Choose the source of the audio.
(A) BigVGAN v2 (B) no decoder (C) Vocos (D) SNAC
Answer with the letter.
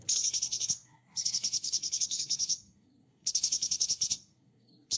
D